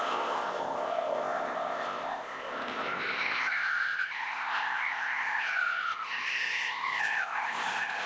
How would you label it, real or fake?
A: fake